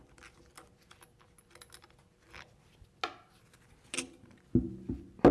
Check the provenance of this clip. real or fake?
real